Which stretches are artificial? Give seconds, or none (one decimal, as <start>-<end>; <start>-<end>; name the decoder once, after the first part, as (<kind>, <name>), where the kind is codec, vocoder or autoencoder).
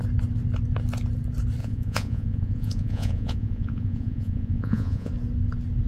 1.6-5.1 (vocoder, Vocos)